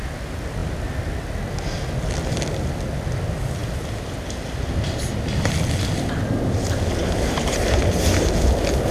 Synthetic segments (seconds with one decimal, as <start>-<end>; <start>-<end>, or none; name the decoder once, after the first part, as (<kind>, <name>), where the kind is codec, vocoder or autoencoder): 7.0-7.8 (vocoder, BigVGAN v2)